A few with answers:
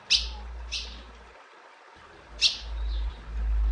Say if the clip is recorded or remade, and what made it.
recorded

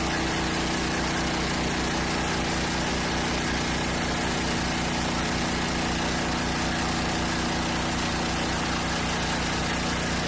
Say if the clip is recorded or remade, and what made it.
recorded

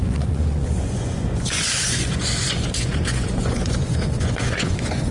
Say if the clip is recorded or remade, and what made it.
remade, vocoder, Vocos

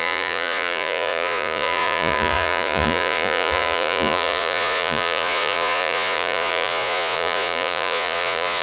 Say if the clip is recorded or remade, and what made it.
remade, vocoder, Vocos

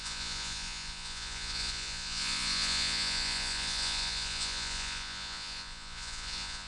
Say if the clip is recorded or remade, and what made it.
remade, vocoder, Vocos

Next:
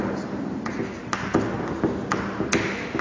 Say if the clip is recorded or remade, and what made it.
recorded